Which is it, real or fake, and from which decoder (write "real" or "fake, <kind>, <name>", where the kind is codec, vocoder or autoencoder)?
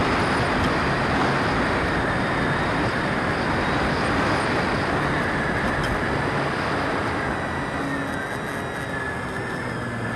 real